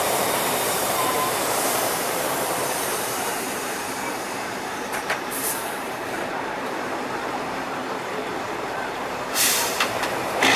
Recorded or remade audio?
remade